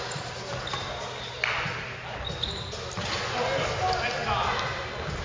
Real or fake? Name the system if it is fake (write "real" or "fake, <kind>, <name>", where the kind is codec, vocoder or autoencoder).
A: real